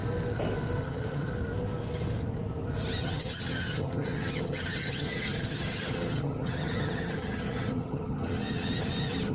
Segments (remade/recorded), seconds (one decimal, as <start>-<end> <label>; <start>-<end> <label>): 0.0-0.8 recorded; 0.8-1.3 remade; 1.3-3.0 recorded; 3.0-9.3 remade